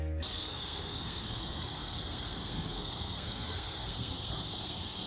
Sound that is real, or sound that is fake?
fake